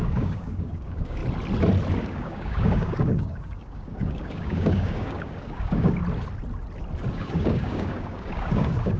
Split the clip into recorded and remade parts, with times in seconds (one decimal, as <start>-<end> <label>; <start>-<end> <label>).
0.0-1.2 remade; 1.2-2.0 recorded; 2.0-6.0 remade; 6.0-7.1 recorded; 7.1-9.0 remade